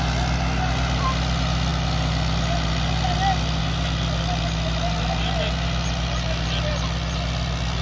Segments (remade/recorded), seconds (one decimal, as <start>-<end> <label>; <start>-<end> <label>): 0.0-7.8 recorded